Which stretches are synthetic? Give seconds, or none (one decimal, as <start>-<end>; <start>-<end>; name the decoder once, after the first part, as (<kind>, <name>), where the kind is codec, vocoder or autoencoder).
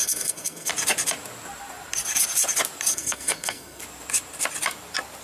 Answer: 0.0-0.7 (codec, SNAC); 2.9-3.8